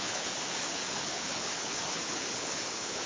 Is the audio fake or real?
fake